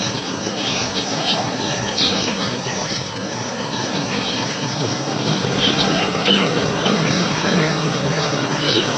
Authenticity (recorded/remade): remade